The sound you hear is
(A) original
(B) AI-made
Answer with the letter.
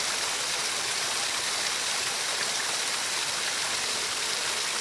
B